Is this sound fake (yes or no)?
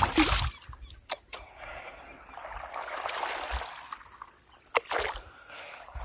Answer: no